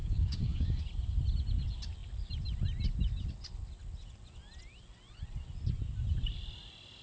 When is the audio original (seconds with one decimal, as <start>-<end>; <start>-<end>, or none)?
0.8-7.0